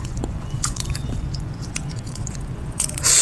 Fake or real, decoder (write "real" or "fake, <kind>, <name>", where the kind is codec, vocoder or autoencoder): fake, vocoder, Vocos